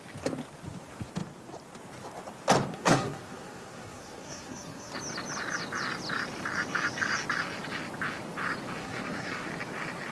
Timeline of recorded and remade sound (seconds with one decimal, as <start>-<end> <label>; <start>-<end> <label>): 0.0-2.7 recorded; 2.7-4.9 remade; 4.9-8.8 recorded; 8.8-9.5 remade; 9.5-10.1 recorded